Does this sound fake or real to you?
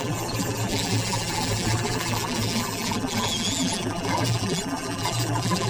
fake